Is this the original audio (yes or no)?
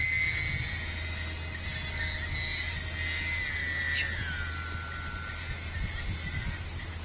yes